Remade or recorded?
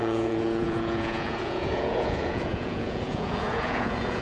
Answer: remade